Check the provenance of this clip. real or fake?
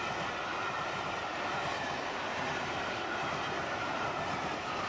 real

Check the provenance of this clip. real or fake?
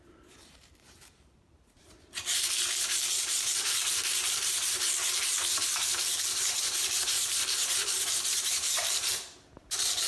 fake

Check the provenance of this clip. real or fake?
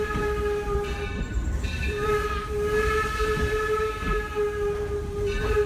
fake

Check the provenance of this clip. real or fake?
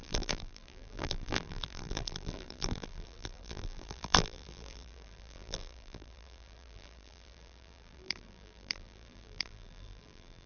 fake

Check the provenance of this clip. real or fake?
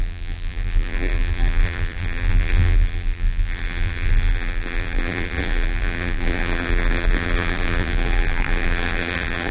fake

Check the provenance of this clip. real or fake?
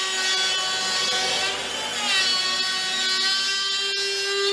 real